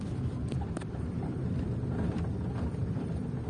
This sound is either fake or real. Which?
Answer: fake